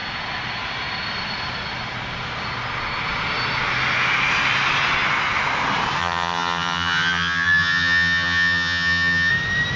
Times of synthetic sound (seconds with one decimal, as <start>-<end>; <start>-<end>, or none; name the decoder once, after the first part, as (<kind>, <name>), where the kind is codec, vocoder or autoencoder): 6.0-9.3 (vocoder, HiFi-GAN)